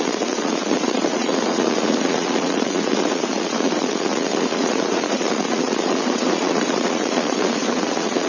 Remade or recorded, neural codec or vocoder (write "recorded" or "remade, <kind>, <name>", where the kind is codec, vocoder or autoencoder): remade, vocoder, Vocos